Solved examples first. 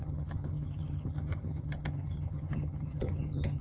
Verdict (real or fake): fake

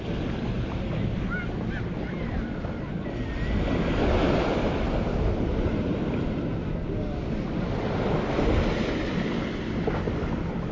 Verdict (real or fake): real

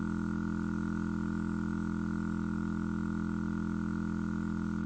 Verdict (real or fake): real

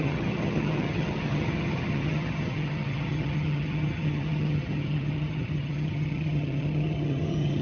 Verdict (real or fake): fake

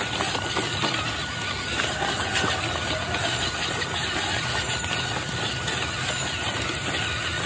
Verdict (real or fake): real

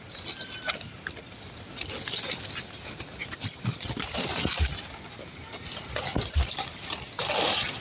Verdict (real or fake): real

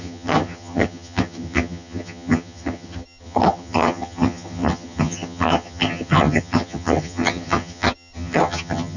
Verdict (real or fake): fake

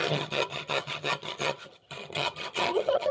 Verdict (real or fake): fake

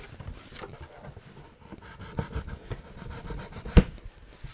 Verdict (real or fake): real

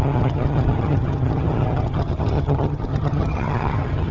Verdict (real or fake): fake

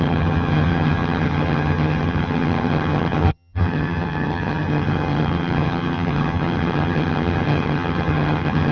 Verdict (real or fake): fake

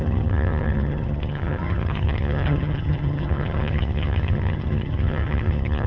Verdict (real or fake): fake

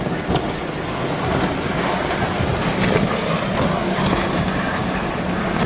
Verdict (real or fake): real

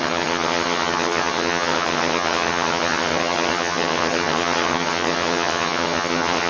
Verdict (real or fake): fake